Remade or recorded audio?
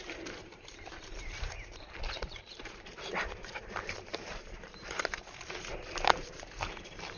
remade